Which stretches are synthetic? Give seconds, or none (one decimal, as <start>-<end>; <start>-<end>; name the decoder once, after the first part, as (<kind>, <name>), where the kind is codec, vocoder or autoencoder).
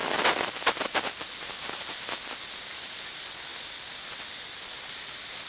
none